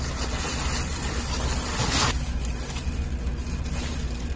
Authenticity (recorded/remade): recorded